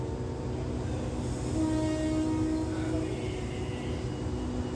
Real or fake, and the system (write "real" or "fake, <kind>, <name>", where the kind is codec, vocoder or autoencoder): real